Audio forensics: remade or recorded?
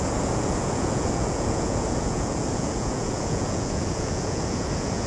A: remade